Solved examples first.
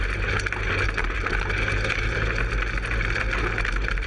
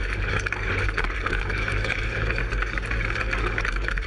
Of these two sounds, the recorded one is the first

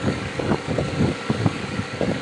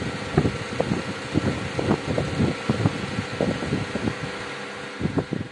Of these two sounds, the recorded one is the second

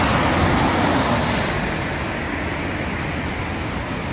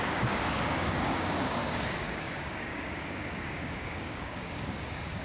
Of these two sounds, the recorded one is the first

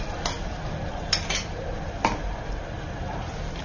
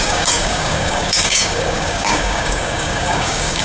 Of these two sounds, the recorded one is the first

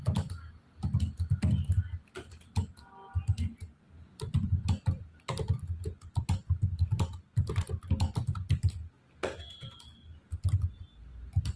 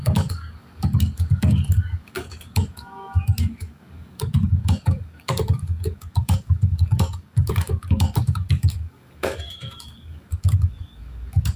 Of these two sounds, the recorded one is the first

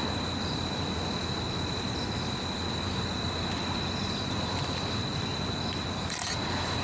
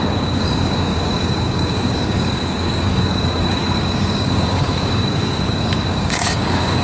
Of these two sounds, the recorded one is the first